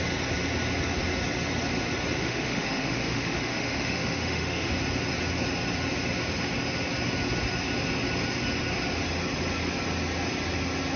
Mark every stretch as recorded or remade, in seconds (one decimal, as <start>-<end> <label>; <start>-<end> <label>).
0.0-2.2 recorded; 2.2-4.7 remade; 4.7-11.0 recorded